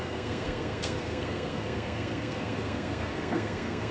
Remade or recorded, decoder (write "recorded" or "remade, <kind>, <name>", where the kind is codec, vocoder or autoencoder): remade, codec, SNAC